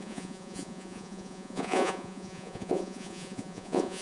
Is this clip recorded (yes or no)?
no